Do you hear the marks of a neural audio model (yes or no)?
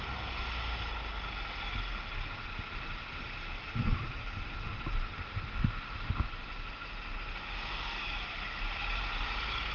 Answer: no